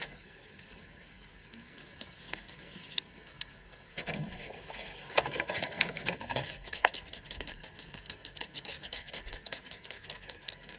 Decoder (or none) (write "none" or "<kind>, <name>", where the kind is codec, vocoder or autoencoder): codec, SNAC